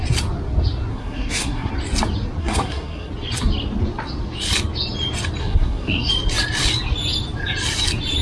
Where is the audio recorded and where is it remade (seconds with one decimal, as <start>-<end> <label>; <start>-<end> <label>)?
0.0-0.9 recorded; 0.9-1.7 remade; 1.7-2.4 recorded; 2.4-3.1 remade; 3.1-5.4 recorded; 5.4-6.1 remade; 6.1-8.2 recorded